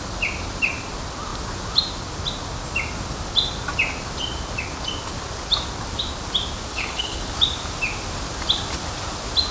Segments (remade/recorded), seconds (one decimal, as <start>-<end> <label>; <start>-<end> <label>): 0.0-6.7 recorded; 6.7-7.3 remade; 7.3-9.5 recorded